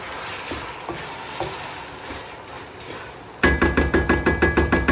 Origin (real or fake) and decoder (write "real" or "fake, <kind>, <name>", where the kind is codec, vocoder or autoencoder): real